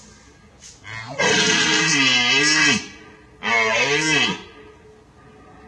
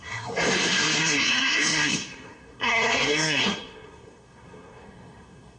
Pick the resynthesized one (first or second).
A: second